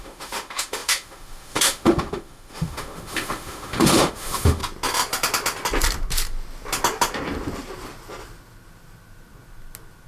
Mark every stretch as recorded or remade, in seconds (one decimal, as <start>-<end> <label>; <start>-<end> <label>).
0.0-4.6 remade; 4.6-10.1 recorded